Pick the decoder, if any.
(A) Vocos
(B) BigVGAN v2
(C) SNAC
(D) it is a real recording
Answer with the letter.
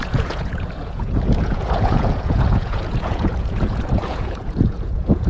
A